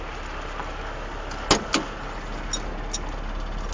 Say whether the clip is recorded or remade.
recorded